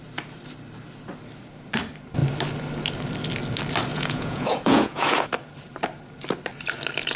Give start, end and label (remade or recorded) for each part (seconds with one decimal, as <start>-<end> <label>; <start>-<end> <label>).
0.0-3.9 recorded; 3.9-5.3 remade; 5.3-7.2 recorded